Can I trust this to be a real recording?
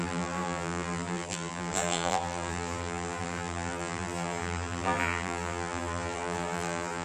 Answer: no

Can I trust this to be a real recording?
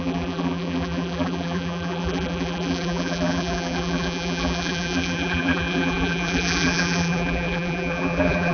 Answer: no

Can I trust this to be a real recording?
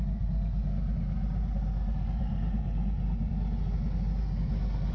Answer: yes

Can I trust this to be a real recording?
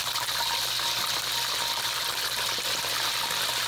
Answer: yes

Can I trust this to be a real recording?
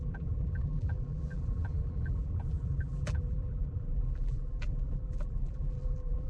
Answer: no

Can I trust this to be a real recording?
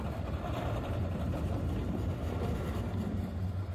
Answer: no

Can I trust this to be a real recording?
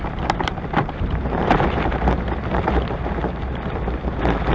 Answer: no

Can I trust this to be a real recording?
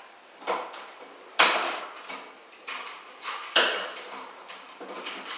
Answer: no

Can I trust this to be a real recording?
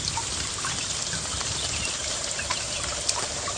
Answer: no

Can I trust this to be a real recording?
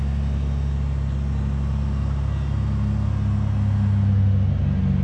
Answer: yes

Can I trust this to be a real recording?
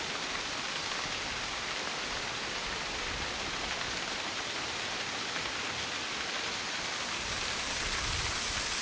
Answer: yes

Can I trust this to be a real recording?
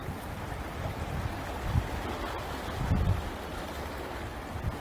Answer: yes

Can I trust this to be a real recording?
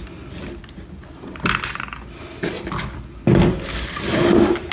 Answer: yes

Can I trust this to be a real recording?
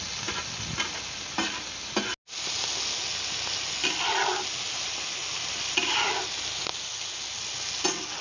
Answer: yes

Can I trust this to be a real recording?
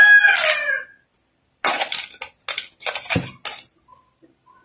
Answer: yes